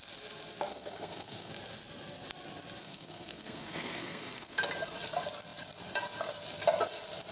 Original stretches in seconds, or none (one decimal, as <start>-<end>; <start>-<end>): 0.0-0.7; 1.5-2.8; 4.6-7.3

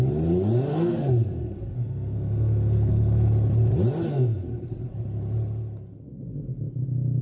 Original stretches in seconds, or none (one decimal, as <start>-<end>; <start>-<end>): 0.0-0.7; 3.3-4.1; 4.7-7.2

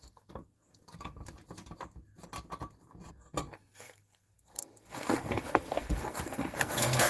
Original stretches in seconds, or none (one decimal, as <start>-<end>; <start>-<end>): 1.2-3.1

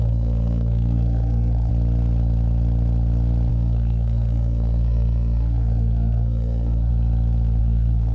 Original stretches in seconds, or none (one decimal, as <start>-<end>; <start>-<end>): 1.7-3.5; 6.9-7.6